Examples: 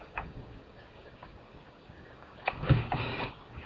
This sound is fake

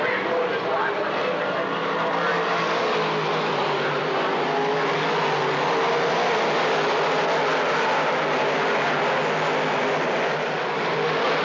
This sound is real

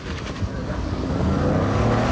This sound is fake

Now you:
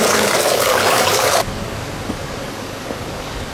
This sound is fake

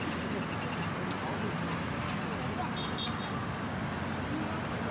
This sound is real